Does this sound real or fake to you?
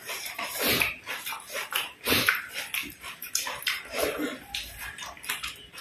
fake